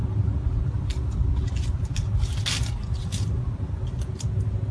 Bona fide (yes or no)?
yes